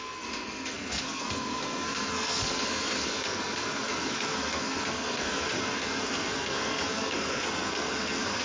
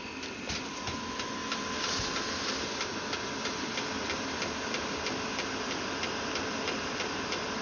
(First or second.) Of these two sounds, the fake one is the first